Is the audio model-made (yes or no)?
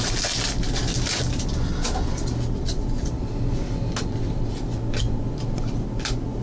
no